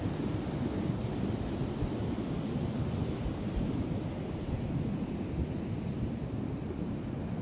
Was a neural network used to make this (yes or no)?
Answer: no